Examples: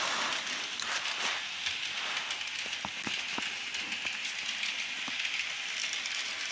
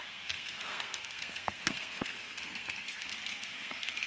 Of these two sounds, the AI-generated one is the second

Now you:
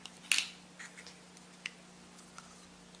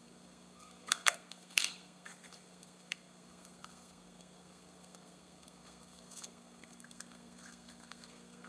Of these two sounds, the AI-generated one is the second